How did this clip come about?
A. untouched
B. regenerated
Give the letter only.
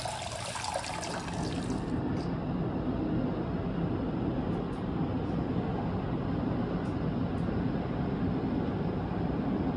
A